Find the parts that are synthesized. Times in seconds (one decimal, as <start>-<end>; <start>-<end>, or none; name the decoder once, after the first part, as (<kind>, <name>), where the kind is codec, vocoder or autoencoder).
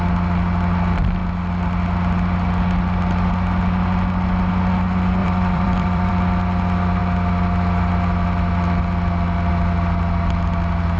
5.2-6.1 (vocoder, BigVGAN v2)